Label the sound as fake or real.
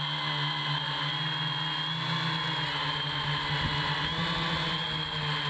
real